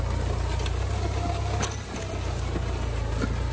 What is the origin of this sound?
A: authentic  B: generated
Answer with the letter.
A